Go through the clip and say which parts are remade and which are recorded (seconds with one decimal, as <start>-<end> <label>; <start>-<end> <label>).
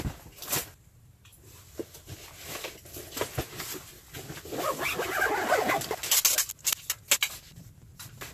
0.0-8.3 recorded